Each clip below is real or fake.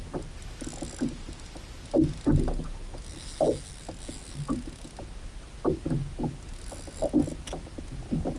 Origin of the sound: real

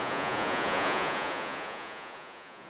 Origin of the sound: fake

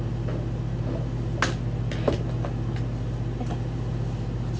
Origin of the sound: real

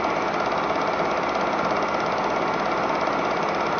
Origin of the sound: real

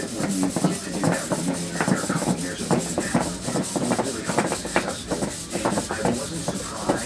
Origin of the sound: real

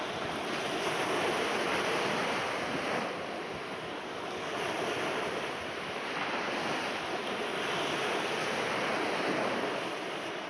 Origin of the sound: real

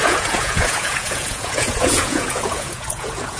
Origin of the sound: fake